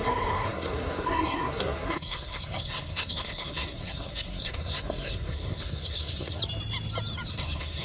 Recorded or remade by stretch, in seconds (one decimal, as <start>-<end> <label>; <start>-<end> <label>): 0.0-6.4 remade; 6.4-7.3 recorded; 7.3-7.8 remade